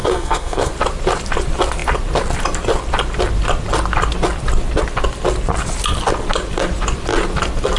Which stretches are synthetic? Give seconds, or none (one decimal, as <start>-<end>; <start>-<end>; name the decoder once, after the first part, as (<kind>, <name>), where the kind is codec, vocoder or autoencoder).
0.0-0.7 (codec, SNAC)